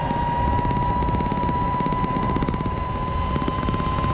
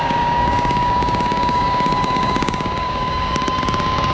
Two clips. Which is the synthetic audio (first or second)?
second